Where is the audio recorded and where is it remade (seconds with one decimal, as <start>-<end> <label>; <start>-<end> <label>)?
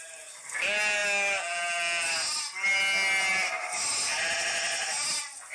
0.0-5.5 recorded